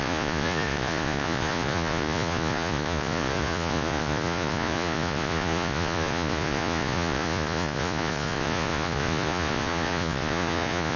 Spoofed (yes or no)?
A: yes